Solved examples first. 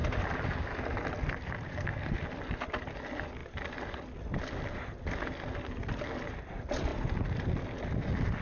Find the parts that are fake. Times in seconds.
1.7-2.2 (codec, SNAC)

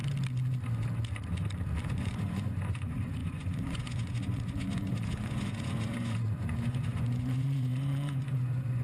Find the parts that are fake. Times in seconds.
1.8-8.8 (vocoder, Vocos)

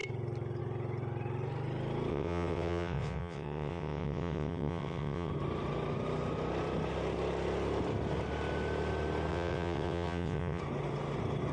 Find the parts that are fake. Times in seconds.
2.1-5.3 (vocoder, WaveNeXt); 9.3-10.6

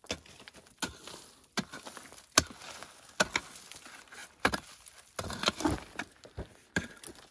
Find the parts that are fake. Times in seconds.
none

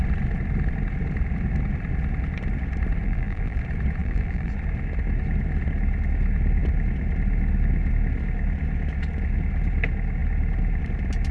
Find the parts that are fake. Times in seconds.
3.0-3.6 (vocoder, BigVGAN v2); 4.0-4.5

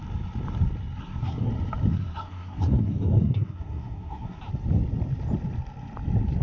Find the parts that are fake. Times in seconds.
1.0-1.5 (codec, SNAC); 1.9-4.4